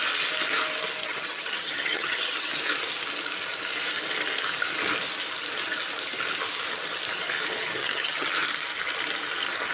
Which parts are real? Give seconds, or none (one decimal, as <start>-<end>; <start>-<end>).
0.0-1.0; 2.5-7.8; 8.3-9.7